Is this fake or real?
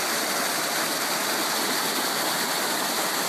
real